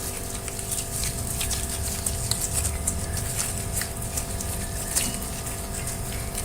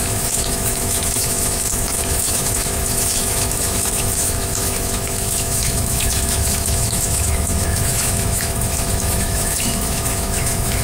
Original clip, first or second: first